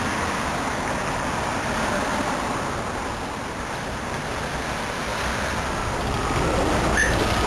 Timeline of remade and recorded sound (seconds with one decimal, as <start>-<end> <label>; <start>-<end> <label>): 0.0-7.5 recorded